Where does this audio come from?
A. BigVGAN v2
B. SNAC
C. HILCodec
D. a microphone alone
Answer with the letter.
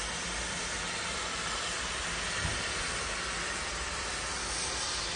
D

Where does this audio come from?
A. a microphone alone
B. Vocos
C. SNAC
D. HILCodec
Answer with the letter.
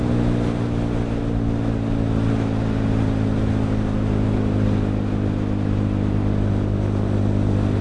A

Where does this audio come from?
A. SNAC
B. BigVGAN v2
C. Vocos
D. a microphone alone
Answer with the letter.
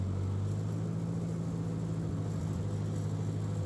D